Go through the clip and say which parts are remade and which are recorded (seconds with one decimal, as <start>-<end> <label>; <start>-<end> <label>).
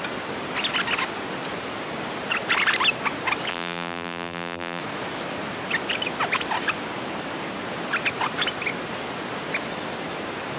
0.0-3.5 recorded; 3.5-4.8 remade; 4.8-10.6 recorded